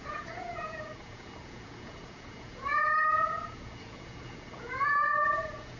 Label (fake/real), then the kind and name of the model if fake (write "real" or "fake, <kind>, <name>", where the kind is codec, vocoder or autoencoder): fake, vocoder, Vocos